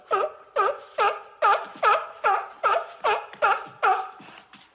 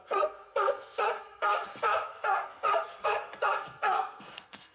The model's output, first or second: second